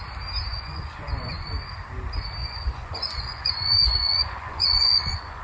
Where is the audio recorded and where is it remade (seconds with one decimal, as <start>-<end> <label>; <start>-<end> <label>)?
0.0-0.5 recorded; 0.5-1.5 remade; 1.5-2.4 recorded; 2.4-5.4 remade